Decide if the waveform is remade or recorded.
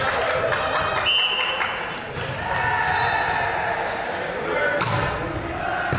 recorded